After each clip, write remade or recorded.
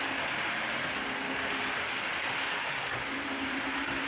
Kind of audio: recorded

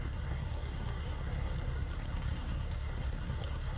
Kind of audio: remade